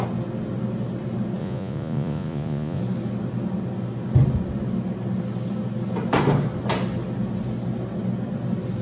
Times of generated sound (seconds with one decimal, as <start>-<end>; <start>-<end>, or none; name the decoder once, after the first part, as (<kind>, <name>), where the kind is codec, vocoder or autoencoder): 1.4-2.8 (vocoder, Vocos)

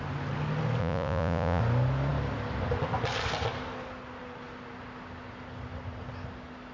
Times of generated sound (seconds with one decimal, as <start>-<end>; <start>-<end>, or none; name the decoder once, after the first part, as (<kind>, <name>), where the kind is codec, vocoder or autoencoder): 0.8-1.6 (vocoder, Vocos)